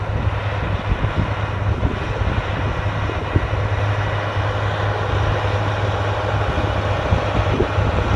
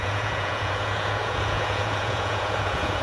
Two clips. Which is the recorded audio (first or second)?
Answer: first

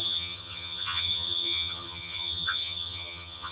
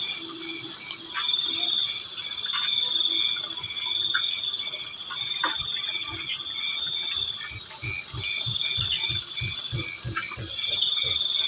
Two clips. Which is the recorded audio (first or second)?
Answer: second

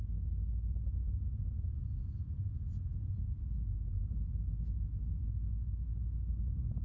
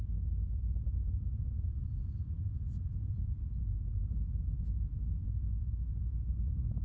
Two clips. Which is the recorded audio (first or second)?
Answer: first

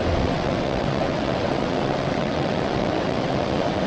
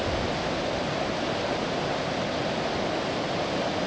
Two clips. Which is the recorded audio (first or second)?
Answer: second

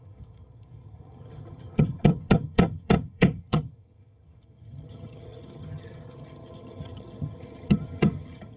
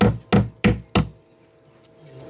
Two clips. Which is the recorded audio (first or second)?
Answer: second